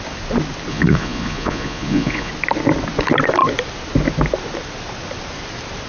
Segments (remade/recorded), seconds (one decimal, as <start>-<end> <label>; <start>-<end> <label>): 0.0-0.7 recorded; 0.7-2.3 remade; 2.3-5.9 recorded